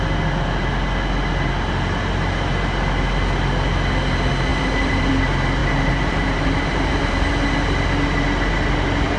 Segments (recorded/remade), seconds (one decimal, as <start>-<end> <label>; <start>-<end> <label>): 0.0-4.5 recorded; 4.5-5.1 remade; 5.1-5.6 recorded; 5.6-7.3 remade; 7.3-9.2 recorded